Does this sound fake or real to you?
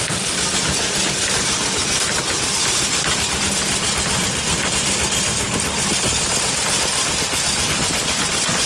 real